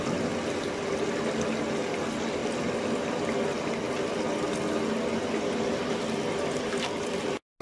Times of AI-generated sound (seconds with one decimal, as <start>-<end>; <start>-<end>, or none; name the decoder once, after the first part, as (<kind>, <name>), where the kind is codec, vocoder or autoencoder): none